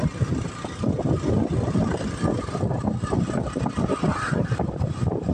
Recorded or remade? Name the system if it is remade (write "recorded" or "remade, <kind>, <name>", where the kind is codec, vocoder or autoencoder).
recorded